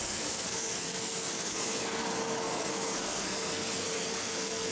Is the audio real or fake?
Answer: fake